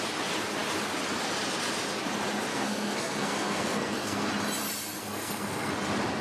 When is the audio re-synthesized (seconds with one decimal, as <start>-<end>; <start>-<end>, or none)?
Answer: 2.5-4.3; 5.0-5.7